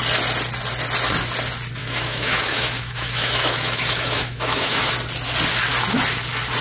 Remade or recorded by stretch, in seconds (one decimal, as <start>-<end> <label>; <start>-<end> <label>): 0.0-1.8 recorded; 1.8-4.9 remade; 4.9-6.6 recorded